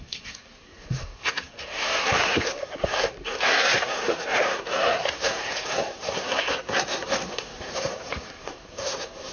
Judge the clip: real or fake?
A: fake